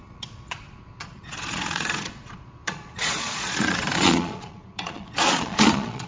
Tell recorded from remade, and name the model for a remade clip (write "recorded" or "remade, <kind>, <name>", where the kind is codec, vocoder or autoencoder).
remade, vocoder, Vocos